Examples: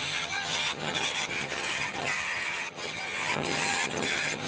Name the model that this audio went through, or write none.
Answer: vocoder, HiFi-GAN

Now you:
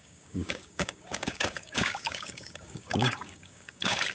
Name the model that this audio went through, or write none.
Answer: codec, DAC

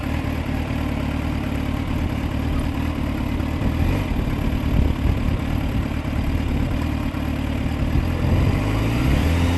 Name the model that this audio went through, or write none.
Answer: none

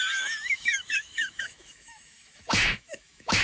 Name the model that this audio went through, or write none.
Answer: autoencoder, DAC-VAE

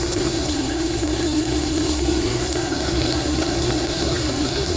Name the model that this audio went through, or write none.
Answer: codec, SNAC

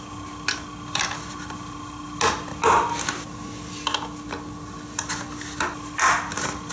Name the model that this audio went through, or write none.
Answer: none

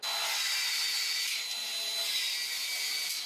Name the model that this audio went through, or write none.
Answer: none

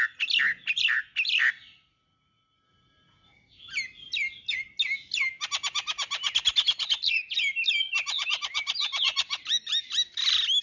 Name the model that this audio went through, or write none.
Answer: none